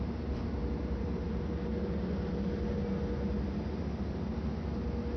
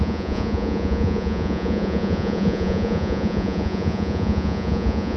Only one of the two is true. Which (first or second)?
first